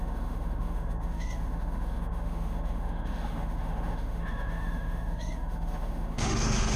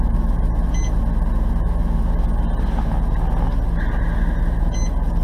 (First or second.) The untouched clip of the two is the second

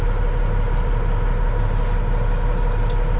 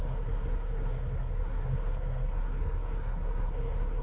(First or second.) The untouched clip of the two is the first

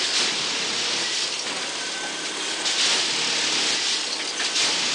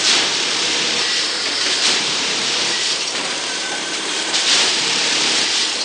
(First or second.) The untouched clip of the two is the first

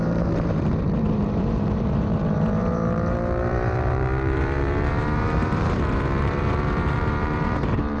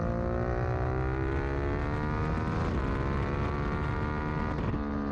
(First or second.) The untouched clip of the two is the second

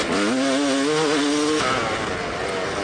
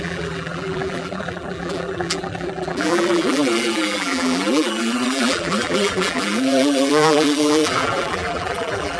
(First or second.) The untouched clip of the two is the first